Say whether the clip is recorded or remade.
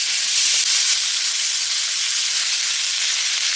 recorded